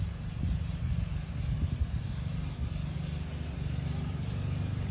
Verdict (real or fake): real